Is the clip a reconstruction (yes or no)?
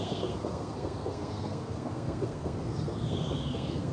yes